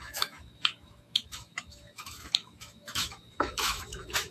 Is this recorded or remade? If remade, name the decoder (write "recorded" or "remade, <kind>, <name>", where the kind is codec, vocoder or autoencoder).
remade, autoencoder, DAC-VAE